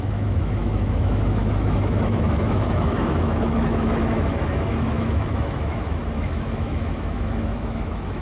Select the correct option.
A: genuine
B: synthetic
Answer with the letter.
B